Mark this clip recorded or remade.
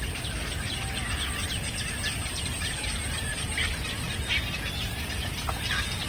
recorded